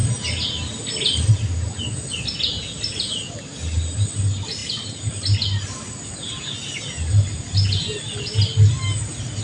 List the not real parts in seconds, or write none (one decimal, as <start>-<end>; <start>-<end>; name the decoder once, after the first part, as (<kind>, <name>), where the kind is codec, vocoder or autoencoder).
none